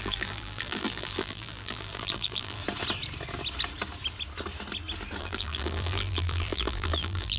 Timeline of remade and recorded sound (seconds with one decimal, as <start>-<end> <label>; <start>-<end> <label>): 0.0-2.6 remade; 2.6-5.2 recorded; 5.2-7.4 remade